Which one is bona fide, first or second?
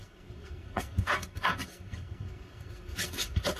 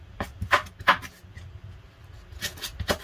second